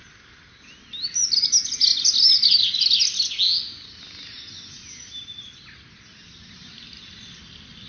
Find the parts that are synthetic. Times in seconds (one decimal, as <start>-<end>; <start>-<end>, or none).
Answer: none